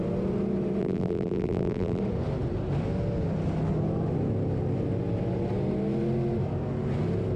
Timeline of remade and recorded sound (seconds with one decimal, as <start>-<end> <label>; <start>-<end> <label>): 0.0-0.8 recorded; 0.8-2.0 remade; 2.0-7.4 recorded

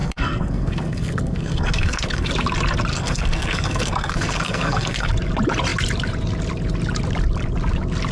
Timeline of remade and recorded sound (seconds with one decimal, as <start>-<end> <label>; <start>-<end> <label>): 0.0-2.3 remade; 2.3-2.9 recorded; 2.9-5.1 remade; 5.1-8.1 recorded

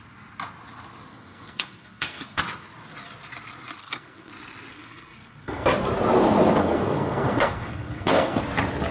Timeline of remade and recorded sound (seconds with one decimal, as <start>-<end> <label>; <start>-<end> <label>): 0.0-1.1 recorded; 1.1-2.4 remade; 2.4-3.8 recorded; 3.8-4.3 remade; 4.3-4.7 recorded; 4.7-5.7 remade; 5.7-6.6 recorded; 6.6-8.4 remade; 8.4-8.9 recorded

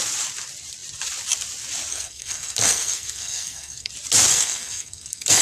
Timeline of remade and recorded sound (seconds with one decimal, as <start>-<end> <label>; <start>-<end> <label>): 0.0-1.9 recorded; 1.9-3.9 remade; 3.9-4.3 recorded; 4.3-5.4 remade

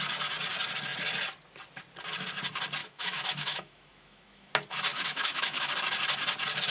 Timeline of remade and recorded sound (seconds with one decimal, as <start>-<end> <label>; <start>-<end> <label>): 0.0-2.8 recorded; 2.8-4.5 remade; 4.5-4.9 recorded; 4.9-5.7 remade; 5.7-6.7 recorded

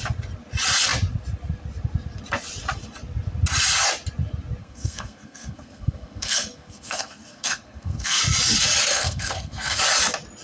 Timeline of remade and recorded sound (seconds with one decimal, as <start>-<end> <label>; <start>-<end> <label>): 0.0-4.6 recorded; 4.6-8.2 remade; 8.2-8.9 recorded; 8.9-9.8 remade; 9.8-10.4 recorded

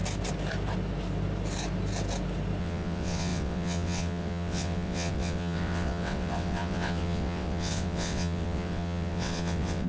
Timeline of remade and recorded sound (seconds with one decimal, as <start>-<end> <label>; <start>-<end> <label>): 0.0-2.6 recorded; 2.6-9.9 remade